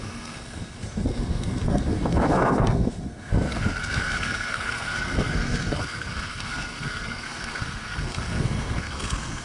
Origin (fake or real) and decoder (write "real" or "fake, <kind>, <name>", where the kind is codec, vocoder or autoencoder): fake, codec, SNAC